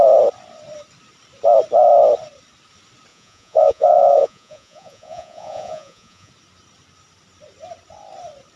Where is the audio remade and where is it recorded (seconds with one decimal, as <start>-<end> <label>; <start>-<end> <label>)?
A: 0.0-3.1 recorded; 3.1-6.3 remade; 6.3-8.6 recorded